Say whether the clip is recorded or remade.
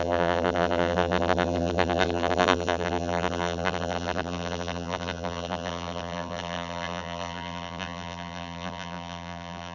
remade